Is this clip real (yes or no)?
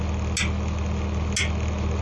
yes